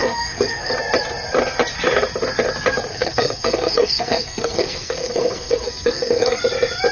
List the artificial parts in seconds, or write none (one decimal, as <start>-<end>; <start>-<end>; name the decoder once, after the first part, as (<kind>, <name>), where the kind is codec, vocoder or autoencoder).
0.0-0.7 (codec, SNAC); 2.9-6.4